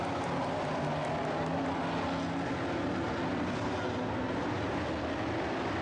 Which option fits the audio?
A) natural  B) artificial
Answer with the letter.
A